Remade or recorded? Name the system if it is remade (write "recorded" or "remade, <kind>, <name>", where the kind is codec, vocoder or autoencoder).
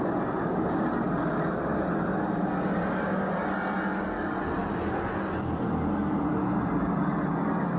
recorded